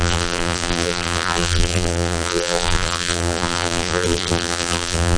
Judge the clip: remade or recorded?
remade